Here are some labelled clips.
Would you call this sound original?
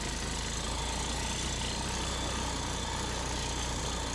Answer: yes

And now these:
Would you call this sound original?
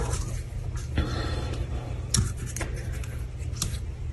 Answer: yes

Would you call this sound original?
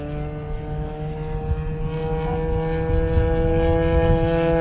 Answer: yes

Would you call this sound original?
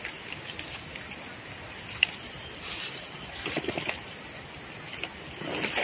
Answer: yes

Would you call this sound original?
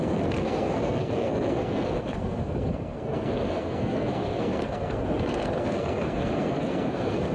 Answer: no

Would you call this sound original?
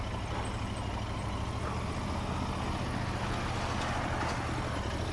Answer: yes